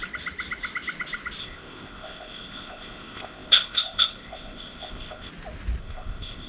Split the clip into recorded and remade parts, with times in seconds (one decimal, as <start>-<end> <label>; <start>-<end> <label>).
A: 0.0-1.4 recorded; 1.4-5.3 remade; 5.3-5.8 recorded; 5.8-6.5 remade